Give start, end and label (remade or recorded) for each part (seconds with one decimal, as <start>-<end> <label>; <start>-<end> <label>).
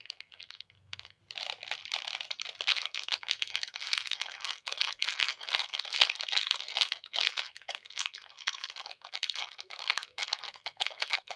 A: 0.0-1.2 remade; 1.2-2.7 recorded; 2.7-11.4 remade